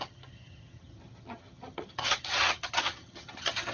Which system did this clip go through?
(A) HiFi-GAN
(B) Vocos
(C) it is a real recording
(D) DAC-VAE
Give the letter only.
A